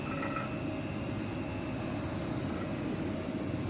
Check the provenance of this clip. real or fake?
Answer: real